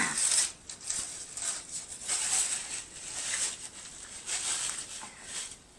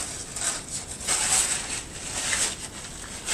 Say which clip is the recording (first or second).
second